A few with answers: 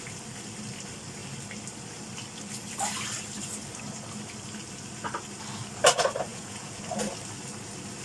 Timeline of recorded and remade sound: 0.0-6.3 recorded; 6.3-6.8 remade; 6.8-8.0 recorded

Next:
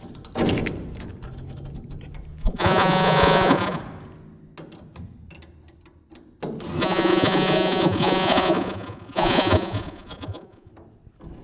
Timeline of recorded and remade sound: 0.0-2.4 recorded; 2.4-3.8 remade; 3.8-6.8 recorded; 6.8-10.7 remade; 10.7-11.4 recorded

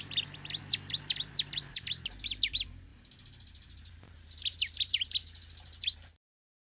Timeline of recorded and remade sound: 0.0-6.7 recorded

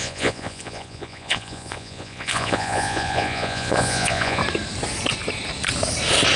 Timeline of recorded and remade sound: 0.0-4.4 remade; 4.4-6.4 recorded

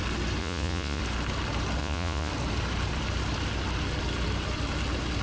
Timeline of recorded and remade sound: 0.0-0.4 recorded; 0.4-1.0 remade; 1.0-1.8 recorded; 1.8-2.3 remade; 2.3-5.2 recorded

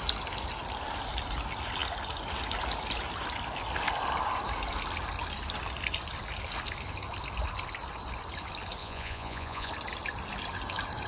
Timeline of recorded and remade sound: 0.0-8.8 recorded; 8.8-9.7 remade; 9.7-11.1 recorded

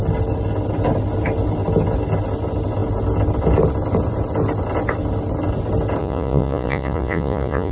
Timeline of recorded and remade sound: 0.0-6.0 recorded; 6.0-7.7 remade